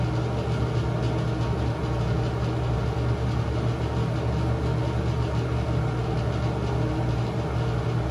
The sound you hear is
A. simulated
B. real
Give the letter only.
B